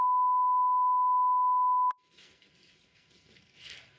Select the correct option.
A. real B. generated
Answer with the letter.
B